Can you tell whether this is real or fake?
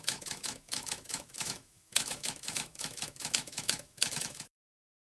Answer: fake